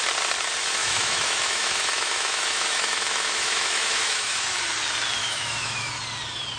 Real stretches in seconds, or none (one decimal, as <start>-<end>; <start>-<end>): 0.0-0.8; 4.6-5.2; 5.9-6.6